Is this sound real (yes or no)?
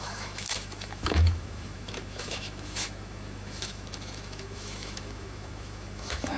no